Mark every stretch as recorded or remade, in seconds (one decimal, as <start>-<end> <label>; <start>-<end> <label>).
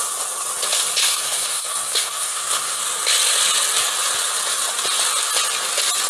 0.0-1.0 recorded; 1.0-2.8 remade; 2.8-6.1 recorded